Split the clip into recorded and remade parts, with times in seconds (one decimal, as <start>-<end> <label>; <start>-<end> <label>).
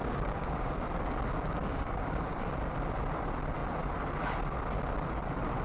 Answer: 0.0-0.7 remade; 0.7-1.6 recorded; 1.6-2.4 remade; 2.4-5.6 recorded